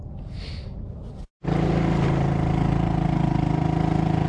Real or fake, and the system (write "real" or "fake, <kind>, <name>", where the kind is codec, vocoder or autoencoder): real